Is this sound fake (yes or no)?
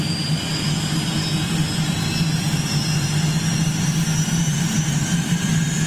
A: no